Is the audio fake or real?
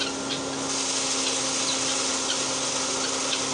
real